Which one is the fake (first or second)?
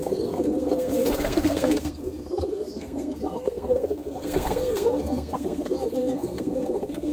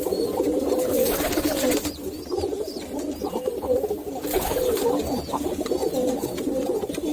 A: first